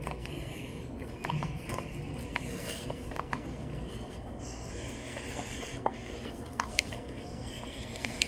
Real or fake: fake